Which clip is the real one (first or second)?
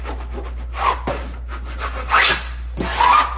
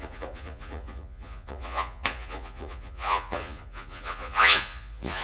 first